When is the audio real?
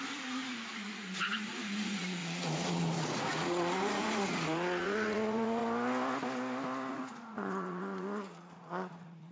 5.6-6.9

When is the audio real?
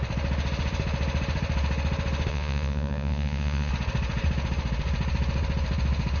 0.0-2.3; 3.7-6.2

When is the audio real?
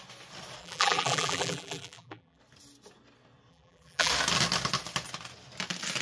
0.0-0.6; 2.4-3.5; 4.1-6.0